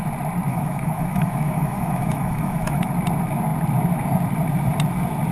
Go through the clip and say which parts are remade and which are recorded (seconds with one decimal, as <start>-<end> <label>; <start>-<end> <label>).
0.0-0.5 recorded; 0.5-2.9 remade; 2.9-5.3 recorded